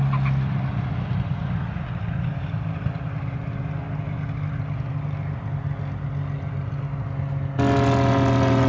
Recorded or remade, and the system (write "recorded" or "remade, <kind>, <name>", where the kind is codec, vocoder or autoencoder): recorded